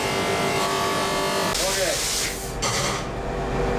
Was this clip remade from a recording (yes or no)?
no